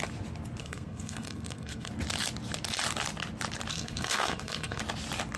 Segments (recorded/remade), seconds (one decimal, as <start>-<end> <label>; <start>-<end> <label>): 0.0-0.6 recorded; 0.6-1.9 remade; 1.9-3.7 recorded; 3.7-4.8 remade; 4.8-5.4 recorded